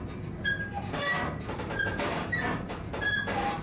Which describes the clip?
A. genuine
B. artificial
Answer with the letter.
A